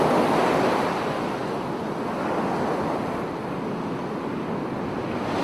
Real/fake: real